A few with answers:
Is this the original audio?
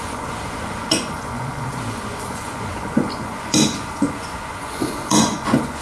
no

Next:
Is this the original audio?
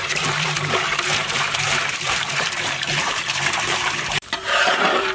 no